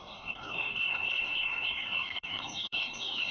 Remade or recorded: remade